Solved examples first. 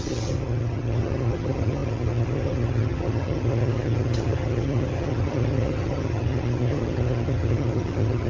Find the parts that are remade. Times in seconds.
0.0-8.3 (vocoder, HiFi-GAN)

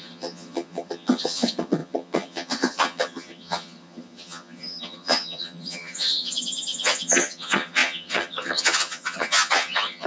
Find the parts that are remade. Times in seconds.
0.0-10.1 (vocoder, HiFi-GAN)

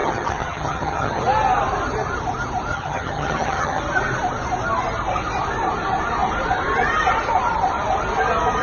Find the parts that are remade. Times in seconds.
0.0-1.2 (vocoder, HiFi-GAN); 2.7-3.8